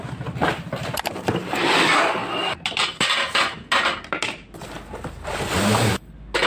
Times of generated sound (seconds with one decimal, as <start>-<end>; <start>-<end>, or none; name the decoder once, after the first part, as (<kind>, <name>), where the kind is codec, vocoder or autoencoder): none